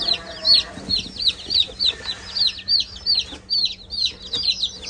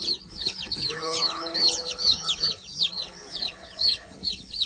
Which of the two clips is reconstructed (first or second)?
second